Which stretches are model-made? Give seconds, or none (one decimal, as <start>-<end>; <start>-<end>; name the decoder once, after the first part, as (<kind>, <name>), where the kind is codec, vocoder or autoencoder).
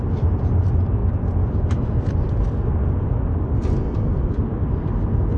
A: none